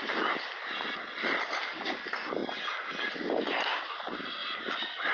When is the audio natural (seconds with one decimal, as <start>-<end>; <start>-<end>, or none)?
0.0-5.1